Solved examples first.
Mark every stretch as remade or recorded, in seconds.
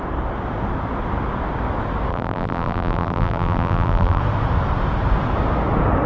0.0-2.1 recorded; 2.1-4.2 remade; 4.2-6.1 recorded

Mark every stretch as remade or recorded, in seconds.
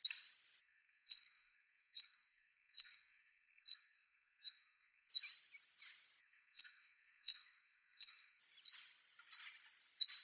0.0-0.6 recorded; 0.6-5.1 remade; 5.1-6.2 recorded; 6.2-8.4 remade; 8.4-10.2 recorded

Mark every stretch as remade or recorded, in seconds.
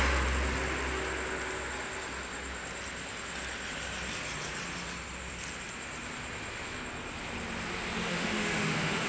0.0-8.1 recorded; 8.1-9.1 remade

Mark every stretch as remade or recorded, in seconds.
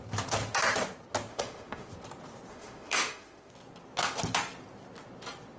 0.0-1.3 recorded; 1.3-1.9 remade; 1.9-2.5 recorded; 2.5-3.5 remade; 3.5-5.6 recorded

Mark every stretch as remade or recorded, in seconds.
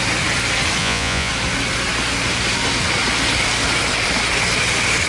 0.0-0.8 recorded; 0.8-1.3 remade; 1.3-5.1 recorded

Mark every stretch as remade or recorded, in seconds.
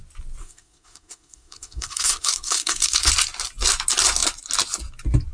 0.0-0.4 recorded; 0.4-3.1 remade; 3.1-5.3 recorded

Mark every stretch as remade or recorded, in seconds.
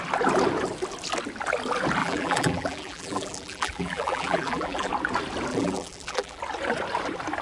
0.0-2.0 recorded; 2.0-4.9 remade; 4.9-5.5 recorded; 5.5-6.4 remade; 6.4-7.4 recorded